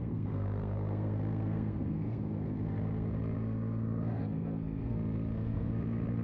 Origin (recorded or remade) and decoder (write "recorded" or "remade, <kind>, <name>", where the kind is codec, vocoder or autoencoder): remade, codec, SNAC